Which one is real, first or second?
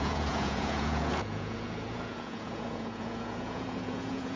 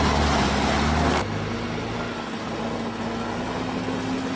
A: second